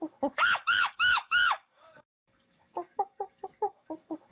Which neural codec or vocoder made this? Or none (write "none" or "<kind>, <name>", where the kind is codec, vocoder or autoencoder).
codec, DAC